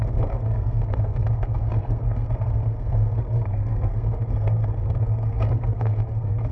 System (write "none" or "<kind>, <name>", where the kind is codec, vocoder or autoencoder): codec, SNAC